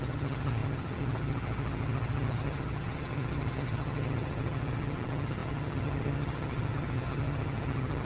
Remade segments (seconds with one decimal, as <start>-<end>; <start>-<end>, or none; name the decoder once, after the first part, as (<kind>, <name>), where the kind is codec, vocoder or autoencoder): 0.0-8.1 (vocoder, HiFi-GAN)